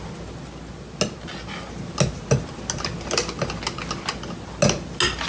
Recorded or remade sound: recorded